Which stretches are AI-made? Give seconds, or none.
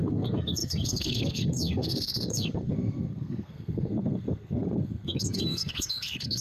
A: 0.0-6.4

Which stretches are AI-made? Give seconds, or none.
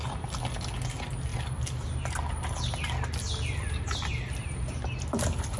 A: none